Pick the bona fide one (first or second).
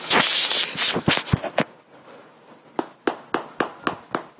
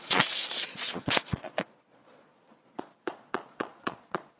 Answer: first